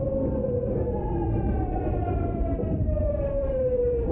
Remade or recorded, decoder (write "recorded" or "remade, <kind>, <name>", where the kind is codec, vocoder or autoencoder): remade, vocoder, BigVGAN v2